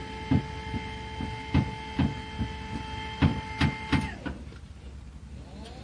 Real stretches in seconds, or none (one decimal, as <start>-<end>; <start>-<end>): 0.0-5.8